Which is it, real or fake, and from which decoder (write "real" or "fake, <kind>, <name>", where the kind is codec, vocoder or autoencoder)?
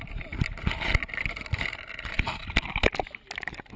real